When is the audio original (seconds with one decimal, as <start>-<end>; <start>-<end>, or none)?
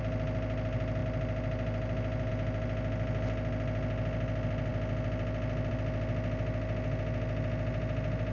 0.0-8.3